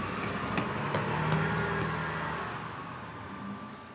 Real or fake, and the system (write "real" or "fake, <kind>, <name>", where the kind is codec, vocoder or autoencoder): real